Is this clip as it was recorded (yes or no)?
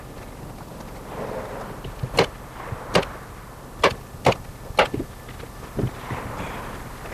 yes